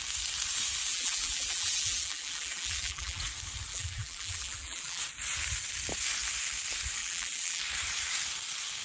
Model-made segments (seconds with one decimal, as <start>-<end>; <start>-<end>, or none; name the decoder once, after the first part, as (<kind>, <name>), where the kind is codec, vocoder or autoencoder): 0.9-3.2 (vocoder, BigVGAN v2); 3.7-5.0; 7.0-7.6